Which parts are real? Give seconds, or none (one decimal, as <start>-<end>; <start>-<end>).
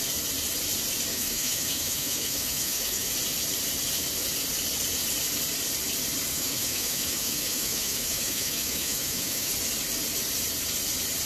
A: 0.0-1.1; 3.1-6.3; 9.5-11.3